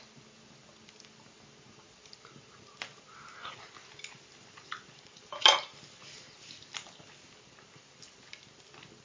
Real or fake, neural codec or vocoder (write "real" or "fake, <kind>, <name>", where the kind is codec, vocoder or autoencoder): real